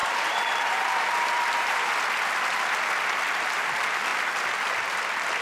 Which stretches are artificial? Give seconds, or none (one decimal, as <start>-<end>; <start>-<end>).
0.0-1.9